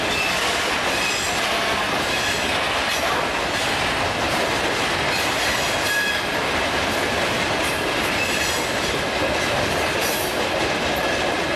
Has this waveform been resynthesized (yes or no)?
no